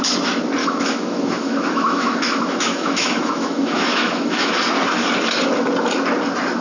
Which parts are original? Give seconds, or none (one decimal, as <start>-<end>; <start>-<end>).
0.0-0.6; 4.5-6.6